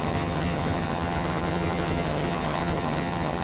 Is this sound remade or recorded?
remade